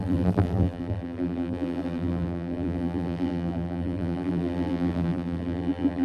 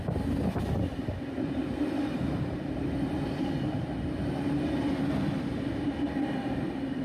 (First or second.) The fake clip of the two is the first